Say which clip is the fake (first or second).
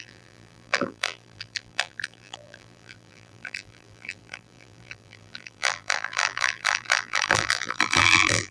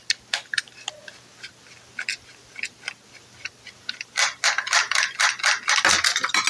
first